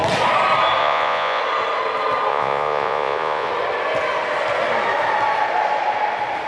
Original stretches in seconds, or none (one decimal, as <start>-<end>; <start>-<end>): 0.0-0.8; 1.4-2.3; 3.5-6.5